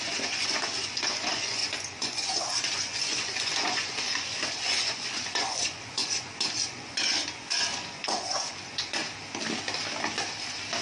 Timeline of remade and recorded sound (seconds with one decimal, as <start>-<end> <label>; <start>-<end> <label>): 0.0-9.0 remade; 9.0-10.8 recorded